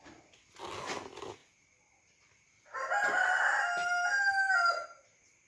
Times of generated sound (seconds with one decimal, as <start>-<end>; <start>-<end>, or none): none

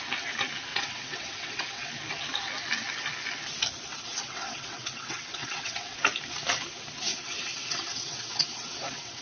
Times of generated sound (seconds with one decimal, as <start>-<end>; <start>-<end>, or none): 0.7-1.9; 3.9-6.0; 7.1-9.2

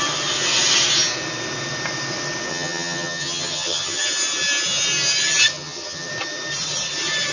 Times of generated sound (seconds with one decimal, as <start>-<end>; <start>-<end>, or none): 2.5-4.1; 5.5-6.1